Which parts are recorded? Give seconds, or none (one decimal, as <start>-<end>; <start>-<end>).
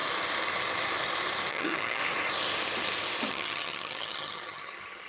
0.0-1.5; 2.0-3.3